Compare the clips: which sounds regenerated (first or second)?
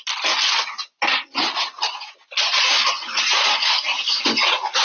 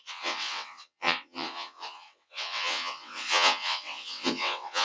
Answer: second